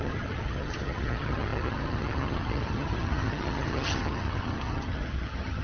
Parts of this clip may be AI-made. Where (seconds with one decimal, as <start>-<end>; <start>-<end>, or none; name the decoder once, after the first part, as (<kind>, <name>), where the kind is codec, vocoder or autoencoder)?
0.0-5.6 (vocoder, HiFi-GAN)